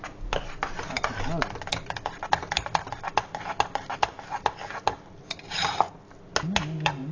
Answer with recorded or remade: recorded